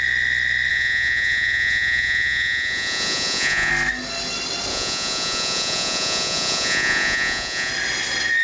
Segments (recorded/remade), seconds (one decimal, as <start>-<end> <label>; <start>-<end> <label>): 0.0-0.7 recorded; 0.7-3.7 remade; 3.7-4.7 recorded; 4.7-7.7 remade; 7.7-8.4 recorded